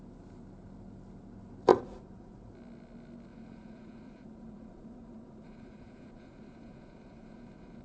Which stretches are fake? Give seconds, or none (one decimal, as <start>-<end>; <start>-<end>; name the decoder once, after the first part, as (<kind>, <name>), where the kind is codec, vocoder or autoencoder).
1.7-2.5 (vocoder, Vocos); 3.3-7.8